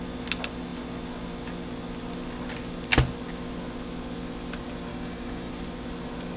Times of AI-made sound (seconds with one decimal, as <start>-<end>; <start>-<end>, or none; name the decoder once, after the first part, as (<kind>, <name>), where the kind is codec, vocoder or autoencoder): 4.9-5.5 (codec, DAC)